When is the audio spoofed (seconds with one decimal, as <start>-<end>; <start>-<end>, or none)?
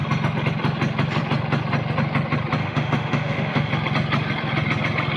2.6-3.7